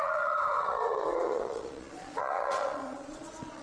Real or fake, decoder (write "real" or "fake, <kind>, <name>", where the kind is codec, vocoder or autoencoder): fake, vocoder, Vocos